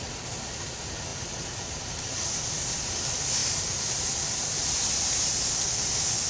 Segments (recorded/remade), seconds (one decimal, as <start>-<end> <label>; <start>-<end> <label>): 0.0-1.1 recorded; 1.1-3.0 remade; 3.0-3.4 recorded; 3.4-4.1 remade; 4.1-6.3 recorded